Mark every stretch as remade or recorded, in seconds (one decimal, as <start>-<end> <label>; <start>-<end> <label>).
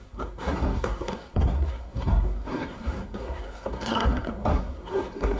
0.0-5.4 remade